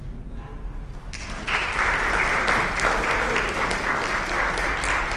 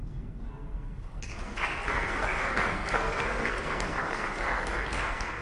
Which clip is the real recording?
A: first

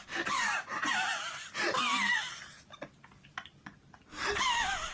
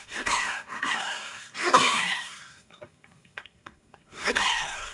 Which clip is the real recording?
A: first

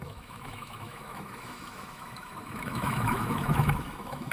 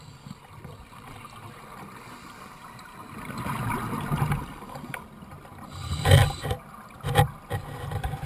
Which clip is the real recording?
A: second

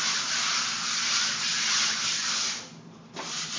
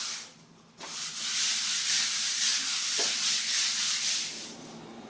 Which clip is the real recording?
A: first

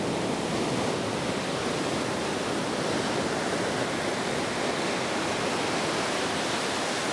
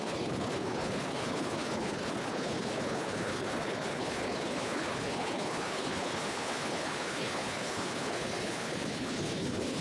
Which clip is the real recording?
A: first